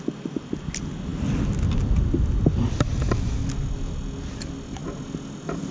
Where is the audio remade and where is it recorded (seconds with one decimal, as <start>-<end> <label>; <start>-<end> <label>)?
0.0-5.7 recorded